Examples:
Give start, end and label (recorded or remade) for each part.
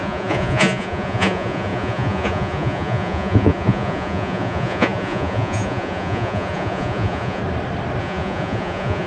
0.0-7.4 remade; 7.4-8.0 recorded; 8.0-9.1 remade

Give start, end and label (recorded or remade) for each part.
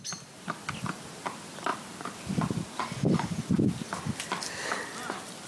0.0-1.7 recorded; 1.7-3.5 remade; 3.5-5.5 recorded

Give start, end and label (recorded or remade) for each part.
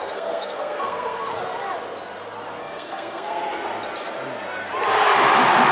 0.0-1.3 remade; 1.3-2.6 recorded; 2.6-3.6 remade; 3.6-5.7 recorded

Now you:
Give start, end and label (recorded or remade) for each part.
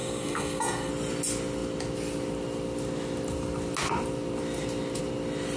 0.0-0.9 remade; 0.9-5.6 recorded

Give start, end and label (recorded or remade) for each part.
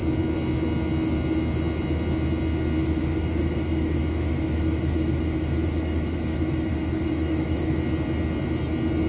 0.0-2.8 recorded; 2.8-7.8 remade; 7.8-9.1 recorded